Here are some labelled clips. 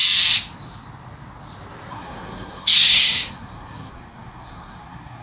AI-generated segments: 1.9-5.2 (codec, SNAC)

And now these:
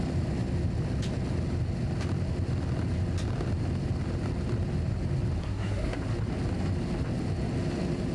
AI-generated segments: 5.4-6.0 (codec, SNAC)

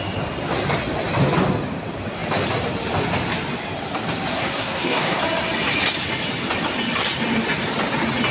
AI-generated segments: 4.3-5.2 (codec, SNAC)

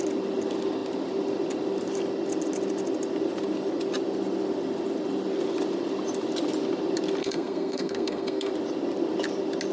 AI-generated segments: 7.2-8.5 (codec, SNAC)

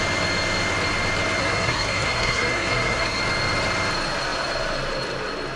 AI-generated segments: 1.4-3.2 (codec, SNAC)

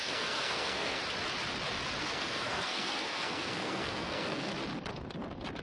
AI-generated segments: 0.0-1.0 (codec, SNAC); 2.0-4.5